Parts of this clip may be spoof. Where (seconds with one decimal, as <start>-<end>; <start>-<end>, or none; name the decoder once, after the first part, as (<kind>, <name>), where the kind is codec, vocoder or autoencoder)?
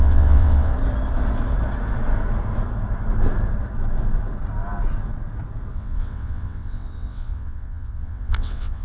0.0-0.7 (vocoder, WaveNeXt); 5.7-8.8